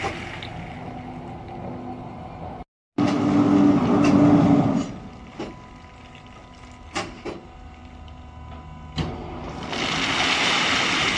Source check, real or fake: real